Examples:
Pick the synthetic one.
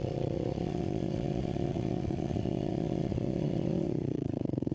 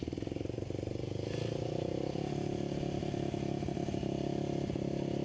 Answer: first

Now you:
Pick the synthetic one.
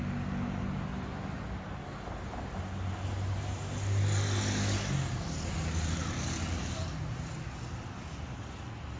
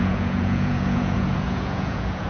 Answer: second